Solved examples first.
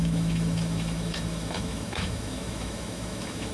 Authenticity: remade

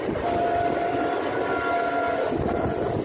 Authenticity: recorded